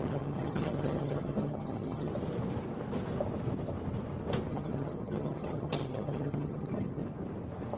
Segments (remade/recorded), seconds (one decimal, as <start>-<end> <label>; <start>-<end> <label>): 0.0-2.1 remade; 2.1-4.5 recorded; 4.5-7.0 remade; 7.0-7.8 recorded